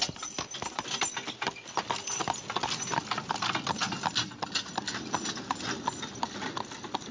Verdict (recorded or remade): recorded